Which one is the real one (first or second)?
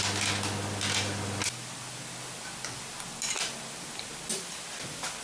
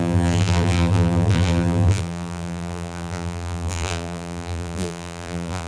first